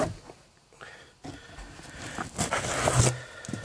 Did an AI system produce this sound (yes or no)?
no